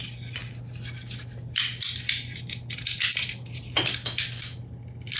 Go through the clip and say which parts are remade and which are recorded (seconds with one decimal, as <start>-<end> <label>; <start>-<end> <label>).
0.0-5.2 recorded